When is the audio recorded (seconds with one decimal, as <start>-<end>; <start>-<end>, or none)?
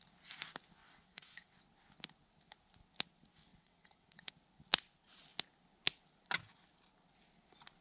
0.0-0.8; 1.6-3.5; 4.3-7.8